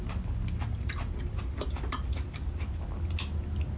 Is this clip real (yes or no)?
yes